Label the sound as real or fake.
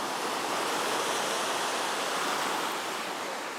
real